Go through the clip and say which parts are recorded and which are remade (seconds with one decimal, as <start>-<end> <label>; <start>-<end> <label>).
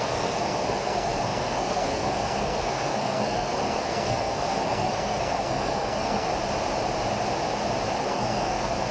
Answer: 0.0-6.3 remade; 6.3-8.0 recorded; 8.0-8.9 remade